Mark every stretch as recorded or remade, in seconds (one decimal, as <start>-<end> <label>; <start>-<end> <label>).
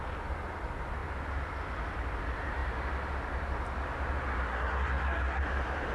0.0-4.5 recorded; 4.5-5.4 remade; 5.4-5.9 recorded